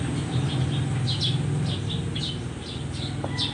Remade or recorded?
recorded